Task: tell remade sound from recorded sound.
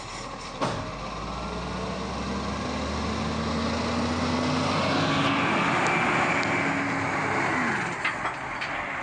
recorded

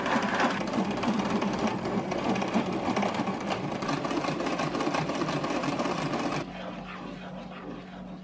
recorded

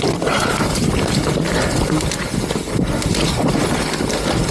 recorded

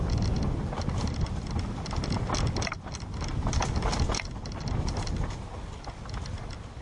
recorded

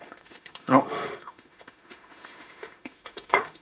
remade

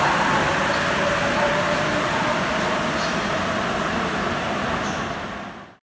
recorded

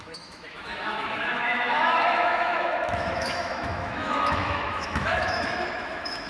remade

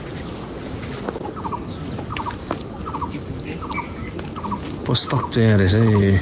recorded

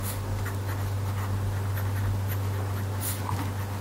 recorded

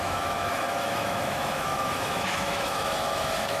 remade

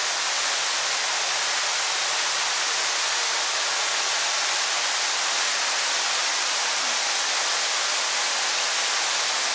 recorded